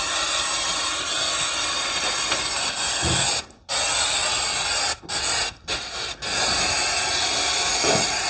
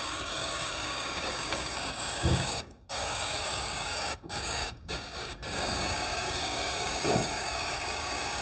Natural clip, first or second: first